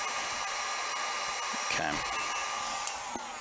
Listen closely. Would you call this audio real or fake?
real